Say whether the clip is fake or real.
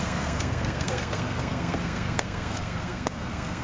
fake